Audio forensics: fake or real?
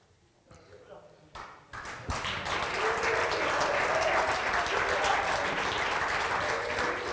real